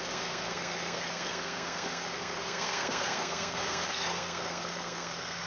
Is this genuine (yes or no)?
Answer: no